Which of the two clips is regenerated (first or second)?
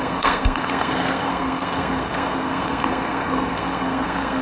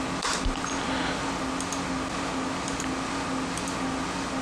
first